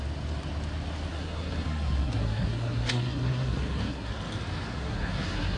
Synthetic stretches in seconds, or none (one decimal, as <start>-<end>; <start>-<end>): 1.1-4.1; 4.7-5.6